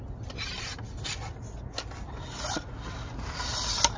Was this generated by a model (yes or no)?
no